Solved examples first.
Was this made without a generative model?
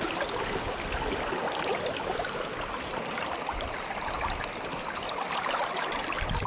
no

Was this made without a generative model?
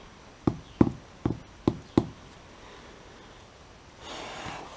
yes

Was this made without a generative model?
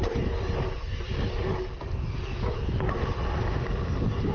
yes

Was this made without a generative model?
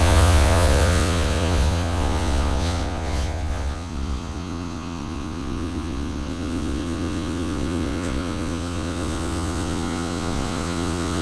no